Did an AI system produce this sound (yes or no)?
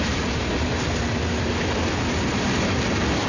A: no